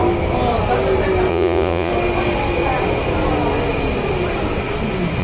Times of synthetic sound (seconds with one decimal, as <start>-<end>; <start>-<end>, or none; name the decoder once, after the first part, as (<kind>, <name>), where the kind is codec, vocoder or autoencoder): 1.3-1.9 (vocoder, Vocos)